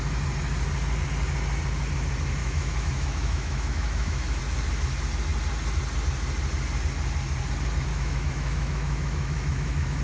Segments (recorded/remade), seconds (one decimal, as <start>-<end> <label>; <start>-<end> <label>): 0.0-2.4 recorded; 2.4-4.4 remade; 4.4-7.9 recorded; 7.9-10.0 remade